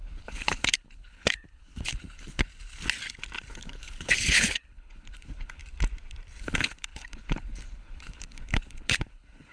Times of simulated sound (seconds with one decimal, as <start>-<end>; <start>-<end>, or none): 0.0-2.5; 3.5-5.6; 6.4-9.5